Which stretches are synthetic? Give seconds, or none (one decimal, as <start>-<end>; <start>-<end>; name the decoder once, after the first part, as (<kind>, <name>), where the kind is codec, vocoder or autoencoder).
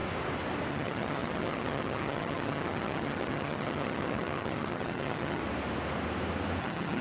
0.7-5.4 (vocoder, HiFi-GAN); 6.6-7.0